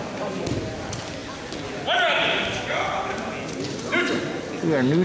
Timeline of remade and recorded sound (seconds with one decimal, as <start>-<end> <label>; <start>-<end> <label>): 0.0-5.0 recorded